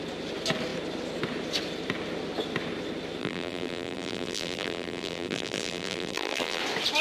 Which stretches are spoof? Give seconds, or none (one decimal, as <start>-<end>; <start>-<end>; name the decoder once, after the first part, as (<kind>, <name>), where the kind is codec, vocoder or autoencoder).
3.2-6.6 (vocoder, BigVGAN v2)